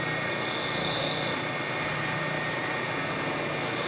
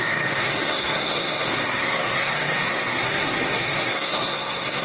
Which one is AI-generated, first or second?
second